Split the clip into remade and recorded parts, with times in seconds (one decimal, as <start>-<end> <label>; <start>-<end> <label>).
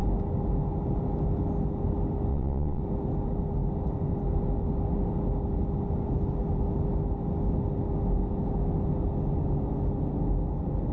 0.0-2.3 recorded; 2.3-2.8 remade; 2.8-10.9 recorded